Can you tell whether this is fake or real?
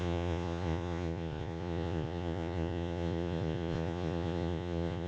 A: fake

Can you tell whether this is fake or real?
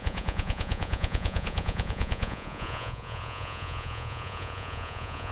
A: fake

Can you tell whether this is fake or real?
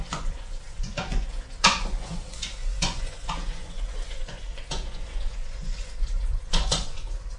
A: fake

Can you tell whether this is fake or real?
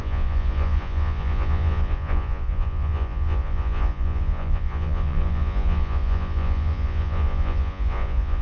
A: fake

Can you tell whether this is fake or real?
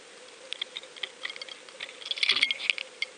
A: real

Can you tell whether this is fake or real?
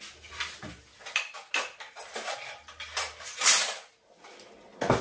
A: real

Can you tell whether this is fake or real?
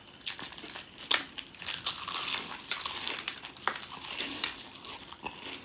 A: real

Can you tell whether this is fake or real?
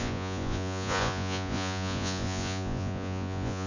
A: fake